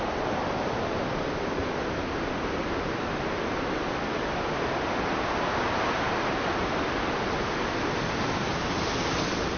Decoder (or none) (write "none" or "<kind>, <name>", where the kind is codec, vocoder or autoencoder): none